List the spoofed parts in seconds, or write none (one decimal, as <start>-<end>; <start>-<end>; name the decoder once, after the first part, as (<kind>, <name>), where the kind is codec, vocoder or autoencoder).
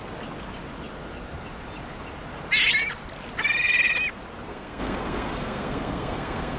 4.5-6.6 (codec, SNAC)